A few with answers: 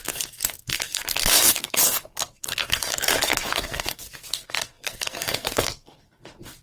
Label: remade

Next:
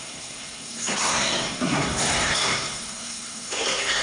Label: remade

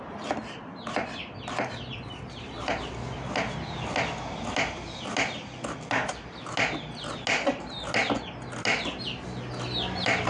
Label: recorded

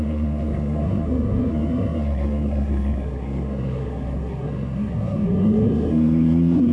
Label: remade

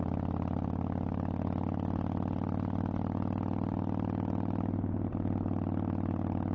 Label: recorded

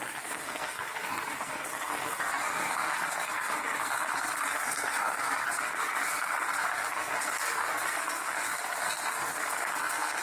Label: remade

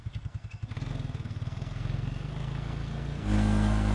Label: remade